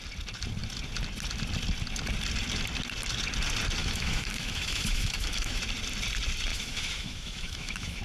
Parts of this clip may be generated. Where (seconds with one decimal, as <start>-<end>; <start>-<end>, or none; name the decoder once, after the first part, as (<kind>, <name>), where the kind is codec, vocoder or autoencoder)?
3.8-5.6 (autoencoder, DAC-VAE); 6.5-8.0